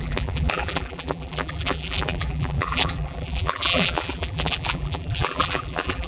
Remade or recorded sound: remade